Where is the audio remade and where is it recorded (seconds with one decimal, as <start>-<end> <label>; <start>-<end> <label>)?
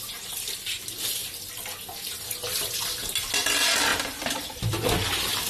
0.0-3.9 recorded; 3.9-4.9 remade; 4.9-5.5 recorded